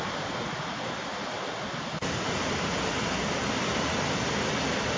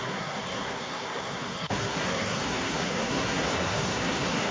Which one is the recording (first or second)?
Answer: first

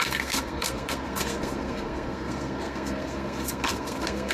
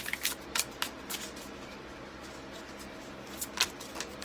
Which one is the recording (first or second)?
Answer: second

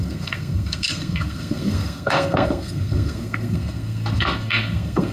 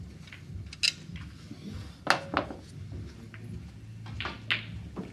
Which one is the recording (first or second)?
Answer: second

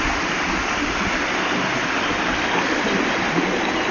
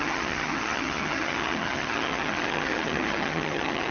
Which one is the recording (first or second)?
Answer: first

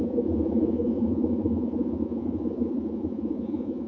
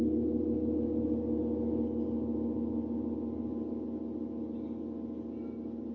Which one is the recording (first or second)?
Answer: second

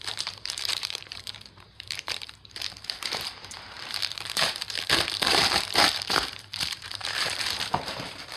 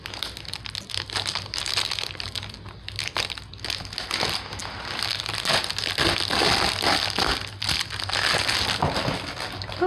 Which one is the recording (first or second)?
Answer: second